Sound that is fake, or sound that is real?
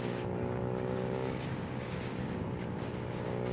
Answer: fake